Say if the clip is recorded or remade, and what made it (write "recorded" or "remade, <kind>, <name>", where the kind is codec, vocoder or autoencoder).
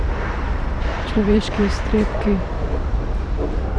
remade, vocoder, BigVGAN v2